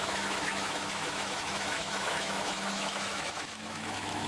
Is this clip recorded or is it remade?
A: remade